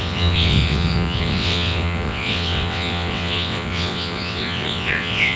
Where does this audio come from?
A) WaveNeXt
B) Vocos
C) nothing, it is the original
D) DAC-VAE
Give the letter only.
A